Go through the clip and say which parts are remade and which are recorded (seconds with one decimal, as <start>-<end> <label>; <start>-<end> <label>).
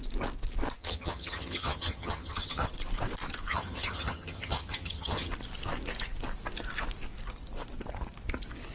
0.0-0.8 recorded; 0.8-2.7 remade; 2.7-3.5 recorded; 3.5-5.3 remade; 5.3-8.7 recorded